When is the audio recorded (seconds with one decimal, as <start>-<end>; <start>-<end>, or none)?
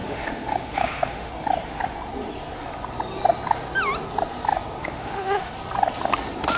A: 1.3-4.8; 5.5-6.6